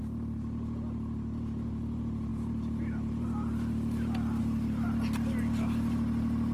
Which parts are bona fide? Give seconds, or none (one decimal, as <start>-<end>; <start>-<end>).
0.0-6.5